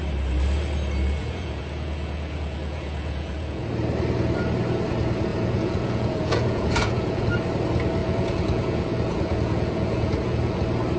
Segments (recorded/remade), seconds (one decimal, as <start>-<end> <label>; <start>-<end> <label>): 0.0-1.2 recorded; 1.2-3.6 remade; 3.6-5.3 recorded; 5.3-7.3 remade; 7.3-8.0 recorded; 8.0-10.6 remade; 10.6-11.0 recorded